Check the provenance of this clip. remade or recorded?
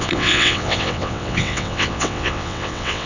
remade